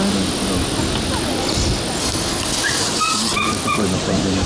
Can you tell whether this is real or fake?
real